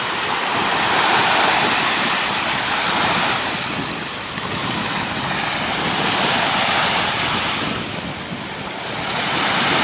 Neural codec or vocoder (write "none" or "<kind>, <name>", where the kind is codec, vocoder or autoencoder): none